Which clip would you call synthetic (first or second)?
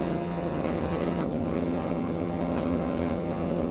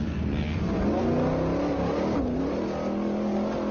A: first